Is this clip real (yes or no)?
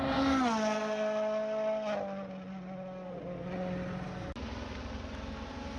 yes